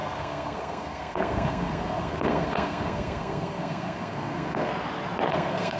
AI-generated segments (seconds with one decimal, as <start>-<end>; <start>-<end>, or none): 0.0-4.7; 5.3-5.8